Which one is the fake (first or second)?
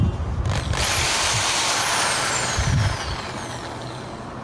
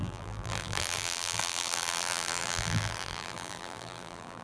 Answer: second